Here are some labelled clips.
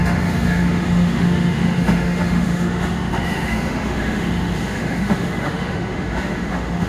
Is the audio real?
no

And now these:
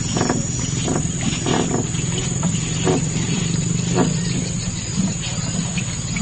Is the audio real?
yes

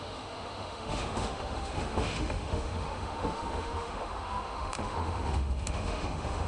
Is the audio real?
no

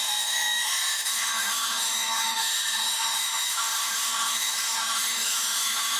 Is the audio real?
no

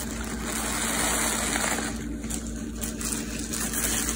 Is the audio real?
yes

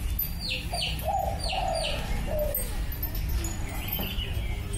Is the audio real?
yes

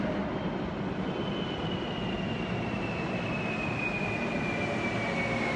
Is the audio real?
yes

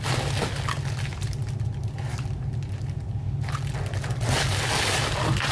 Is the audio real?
yes